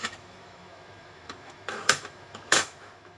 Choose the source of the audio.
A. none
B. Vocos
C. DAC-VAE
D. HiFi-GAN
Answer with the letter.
C